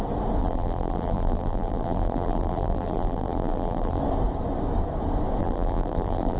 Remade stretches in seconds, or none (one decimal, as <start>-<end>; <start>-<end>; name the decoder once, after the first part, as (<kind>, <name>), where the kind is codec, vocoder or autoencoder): 0.4-4.0 (vocoder, BigVGAN v2); 5.4-6.4